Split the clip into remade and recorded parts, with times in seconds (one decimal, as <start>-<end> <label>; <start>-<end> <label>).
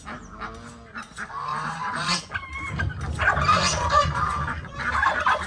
0.0-1.5 recorded; 1.5-2.2 remade; 2.2-3.5 recorded; 3.5-4.9 remade; 4.9-5.5 recorded